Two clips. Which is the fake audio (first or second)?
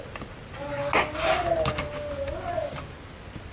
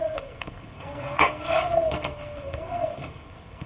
second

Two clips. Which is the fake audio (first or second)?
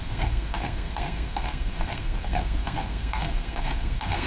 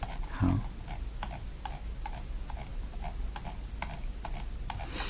first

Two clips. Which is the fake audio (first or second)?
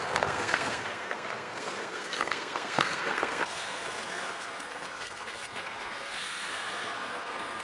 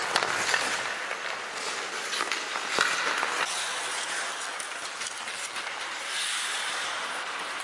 first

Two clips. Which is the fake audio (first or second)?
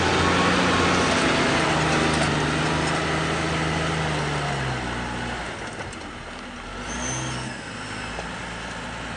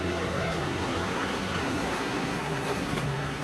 second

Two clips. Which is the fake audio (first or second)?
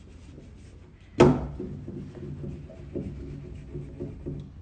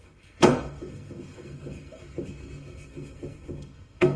second